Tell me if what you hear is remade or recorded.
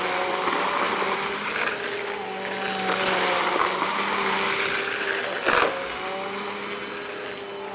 recorded